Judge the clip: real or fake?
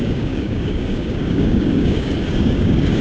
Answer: fake